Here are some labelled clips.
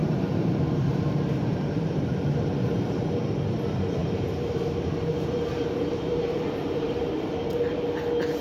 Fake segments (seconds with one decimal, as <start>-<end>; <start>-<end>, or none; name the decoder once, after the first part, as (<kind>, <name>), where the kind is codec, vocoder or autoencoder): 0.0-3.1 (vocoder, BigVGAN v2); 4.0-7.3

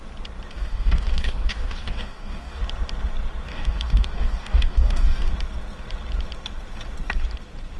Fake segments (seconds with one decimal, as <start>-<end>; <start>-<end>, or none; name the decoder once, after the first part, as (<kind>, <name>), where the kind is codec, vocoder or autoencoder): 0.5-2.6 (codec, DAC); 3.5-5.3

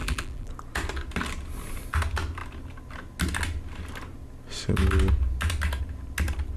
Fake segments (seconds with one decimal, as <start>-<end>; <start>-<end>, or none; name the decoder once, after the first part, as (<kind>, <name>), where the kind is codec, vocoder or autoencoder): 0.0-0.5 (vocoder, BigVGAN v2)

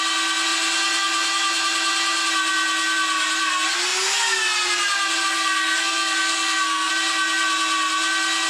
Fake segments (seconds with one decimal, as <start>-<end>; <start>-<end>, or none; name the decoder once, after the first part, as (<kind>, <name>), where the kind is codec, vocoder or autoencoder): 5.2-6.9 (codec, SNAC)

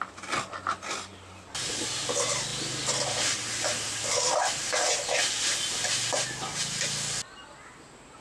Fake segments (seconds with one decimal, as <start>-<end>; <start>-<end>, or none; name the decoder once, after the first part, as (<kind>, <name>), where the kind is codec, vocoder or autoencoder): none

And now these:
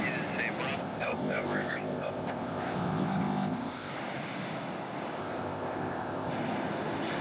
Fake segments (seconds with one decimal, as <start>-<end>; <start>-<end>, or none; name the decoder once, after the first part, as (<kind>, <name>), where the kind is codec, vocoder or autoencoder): 0.8-3.9 (codec, ZipCodec); 5.2-6.3

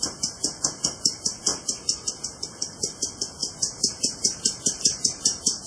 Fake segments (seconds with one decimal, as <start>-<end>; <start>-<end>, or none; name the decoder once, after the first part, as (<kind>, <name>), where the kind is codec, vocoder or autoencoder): 3.4-5.7 (vocoder, BigVGAN v2)